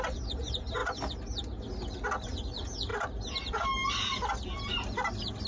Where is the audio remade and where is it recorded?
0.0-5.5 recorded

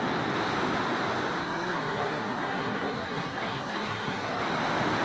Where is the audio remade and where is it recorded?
0.0-1.4 recorded; 1.4-4.4 remade; 4.4-5.0 recorded

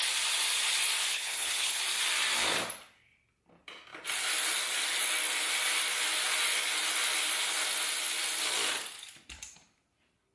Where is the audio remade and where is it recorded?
0.0-1.1 recorded; 1.1-1.8 remade; 1.8-10.3 recorded